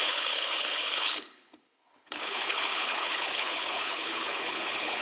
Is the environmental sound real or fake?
fake